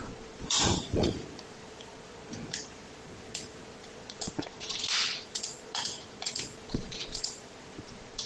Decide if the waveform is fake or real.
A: fake